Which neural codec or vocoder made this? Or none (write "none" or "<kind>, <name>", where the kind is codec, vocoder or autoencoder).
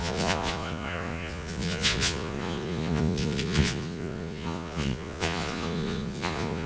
vocoder, Vocos